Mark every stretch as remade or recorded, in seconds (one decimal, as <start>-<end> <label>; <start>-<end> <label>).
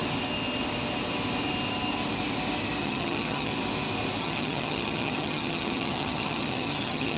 0.0-2.8 recorded; 2.8-3.5 remade; 3.5-4.2 recorded; 4.2-7.2 remade